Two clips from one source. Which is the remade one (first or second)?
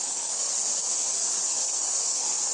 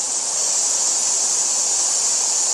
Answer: first